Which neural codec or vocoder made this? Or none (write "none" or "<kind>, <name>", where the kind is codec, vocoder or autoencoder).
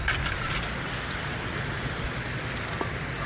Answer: none